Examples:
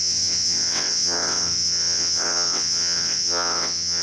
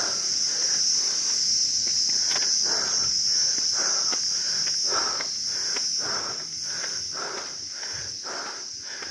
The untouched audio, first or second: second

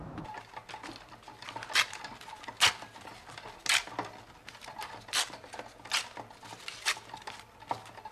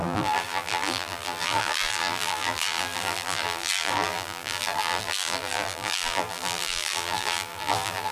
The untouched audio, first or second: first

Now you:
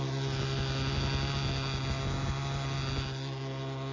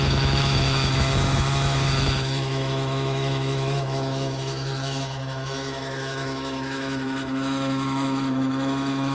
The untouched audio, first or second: first